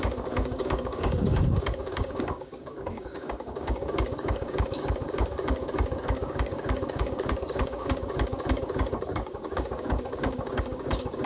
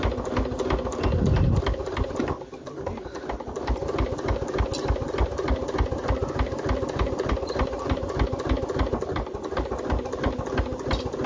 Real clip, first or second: second